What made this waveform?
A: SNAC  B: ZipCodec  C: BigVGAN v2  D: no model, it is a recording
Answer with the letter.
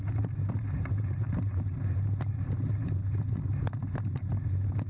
C